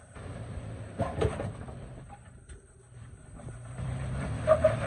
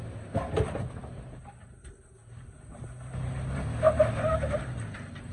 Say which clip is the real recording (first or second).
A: second